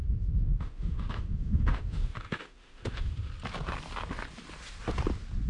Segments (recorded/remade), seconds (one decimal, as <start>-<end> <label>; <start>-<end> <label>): 0.0-3.3 remade; 3.3-5.5 recorded